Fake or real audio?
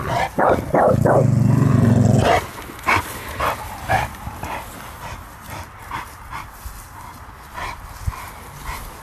real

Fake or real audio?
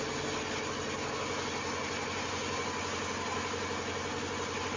real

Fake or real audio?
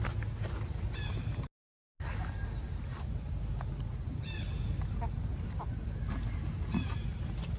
real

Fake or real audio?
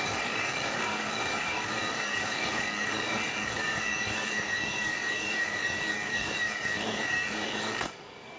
fake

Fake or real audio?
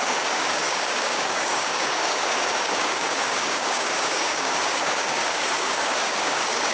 fake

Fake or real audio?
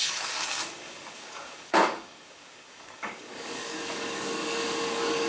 fake